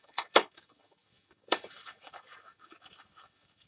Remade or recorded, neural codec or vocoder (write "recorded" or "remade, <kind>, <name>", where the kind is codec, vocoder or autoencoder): remade, autoencoder, DAC-VAE